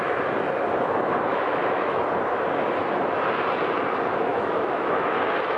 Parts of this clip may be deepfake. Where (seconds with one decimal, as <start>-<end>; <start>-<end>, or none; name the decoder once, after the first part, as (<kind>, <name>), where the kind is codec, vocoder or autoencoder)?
1.3-2.0 (autoencoder, DAC-VAE); 4.3-5.1